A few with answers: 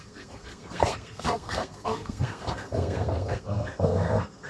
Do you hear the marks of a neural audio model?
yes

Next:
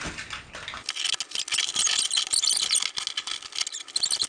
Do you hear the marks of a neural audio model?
no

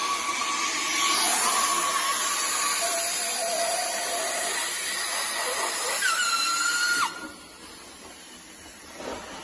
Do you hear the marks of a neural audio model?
no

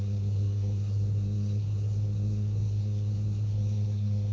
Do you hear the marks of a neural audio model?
yes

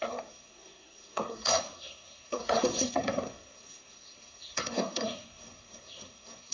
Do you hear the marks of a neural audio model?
yes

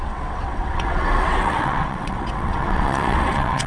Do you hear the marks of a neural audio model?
yes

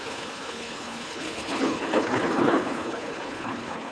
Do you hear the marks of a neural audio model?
yes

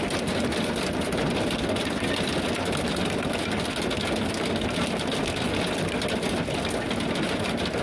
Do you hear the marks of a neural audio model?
no